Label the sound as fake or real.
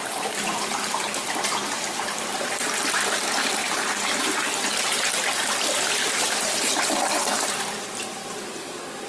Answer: fake